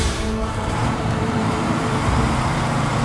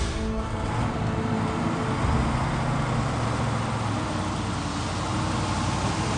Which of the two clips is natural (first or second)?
second